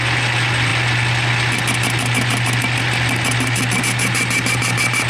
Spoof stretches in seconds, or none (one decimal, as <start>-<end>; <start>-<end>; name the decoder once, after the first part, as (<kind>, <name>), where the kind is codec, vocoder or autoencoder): none